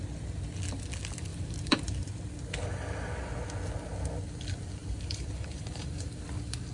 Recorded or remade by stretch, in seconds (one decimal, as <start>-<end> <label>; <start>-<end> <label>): 0.0-1.3 recorded; 1.3-2.2 remade; 2.2-4.8 recorded; 4.8-6.2 remade; 6.2-6.7 recorded